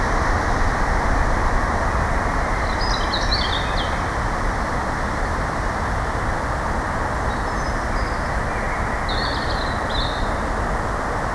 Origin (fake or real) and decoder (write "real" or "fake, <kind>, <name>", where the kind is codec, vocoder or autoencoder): real